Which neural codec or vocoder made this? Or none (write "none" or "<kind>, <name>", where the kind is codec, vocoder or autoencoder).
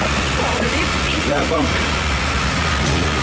vocoder, Vocos